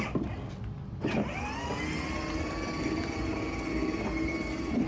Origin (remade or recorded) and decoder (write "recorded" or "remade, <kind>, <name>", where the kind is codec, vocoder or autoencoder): recorded